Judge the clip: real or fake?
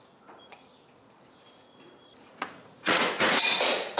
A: fake